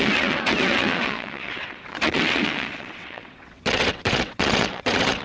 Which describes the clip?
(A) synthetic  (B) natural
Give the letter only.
A